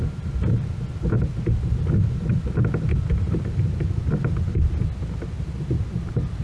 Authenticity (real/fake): real